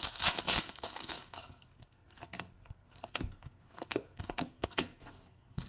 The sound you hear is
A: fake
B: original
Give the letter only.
A